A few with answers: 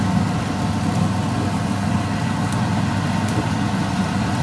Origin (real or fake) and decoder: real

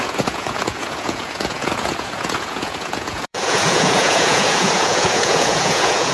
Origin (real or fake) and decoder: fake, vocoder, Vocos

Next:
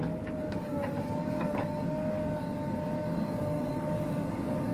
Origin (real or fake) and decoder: fake, codec, DAC